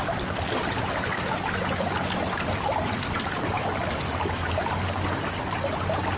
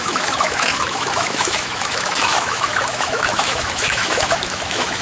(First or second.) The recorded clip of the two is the first